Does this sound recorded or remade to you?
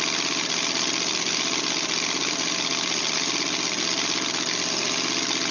recorded